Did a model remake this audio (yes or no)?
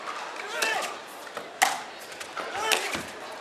no